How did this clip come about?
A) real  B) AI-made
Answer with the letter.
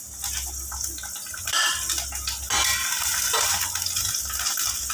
A